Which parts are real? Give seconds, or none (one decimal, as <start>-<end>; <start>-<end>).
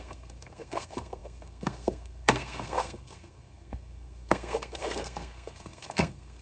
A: none